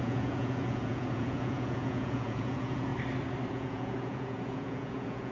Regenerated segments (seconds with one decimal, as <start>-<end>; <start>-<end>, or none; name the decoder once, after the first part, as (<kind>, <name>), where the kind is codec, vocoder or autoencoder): 0.0-2.9 (vocoder, Vocos); 3.5-5.3